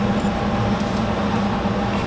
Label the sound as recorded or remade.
recorded